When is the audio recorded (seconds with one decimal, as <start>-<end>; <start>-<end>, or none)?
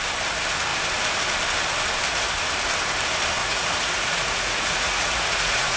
0.0-3.4